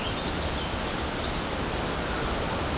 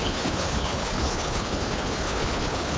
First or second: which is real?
first